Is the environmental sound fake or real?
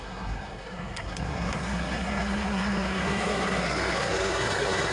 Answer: fake